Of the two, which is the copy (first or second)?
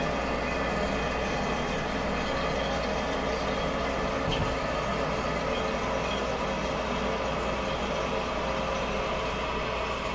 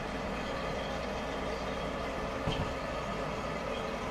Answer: second